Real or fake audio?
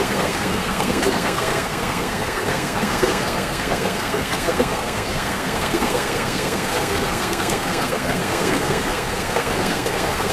fake